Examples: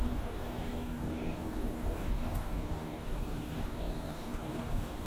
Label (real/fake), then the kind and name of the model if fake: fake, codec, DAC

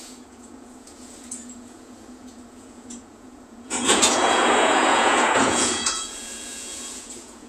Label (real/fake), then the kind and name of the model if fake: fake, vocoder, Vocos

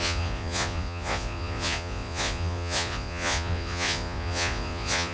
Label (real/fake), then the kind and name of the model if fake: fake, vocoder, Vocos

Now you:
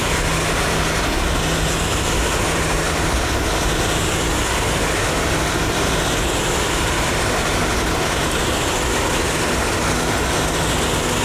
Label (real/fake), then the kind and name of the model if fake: real